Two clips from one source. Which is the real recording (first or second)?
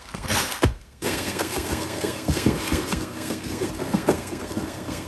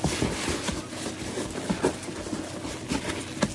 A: second